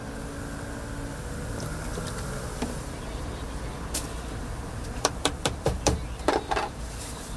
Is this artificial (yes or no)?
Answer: no